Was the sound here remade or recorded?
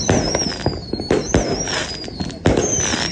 recorded